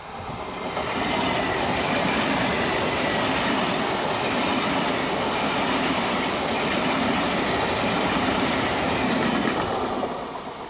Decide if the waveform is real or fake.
real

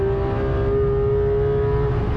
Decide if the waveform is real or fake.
real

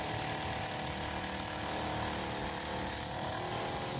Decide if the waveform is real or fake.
real